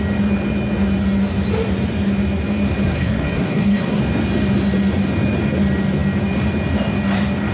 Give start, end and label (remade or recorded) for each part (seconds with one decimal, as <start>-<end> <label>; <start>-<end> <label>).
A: 0.0-2.8 recorded; 2.8-4.0 remade; 4.0-7.5 recorded